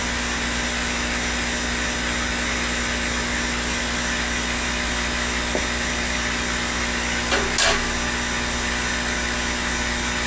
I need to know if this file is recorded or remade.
recorded